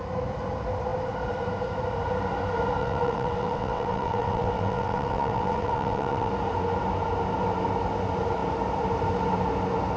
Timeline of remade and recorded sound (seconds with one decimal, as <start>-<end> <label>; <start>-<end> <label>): 0.0-2.8 recorded; 2.8-6.3 remade; 6.3-10.0 recorded